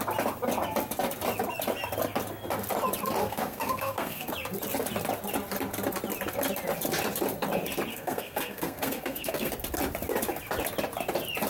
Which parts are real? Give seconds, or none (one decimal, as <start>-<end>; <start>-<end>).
0.0-3.2; 4.3-7.9; 9.5-11.5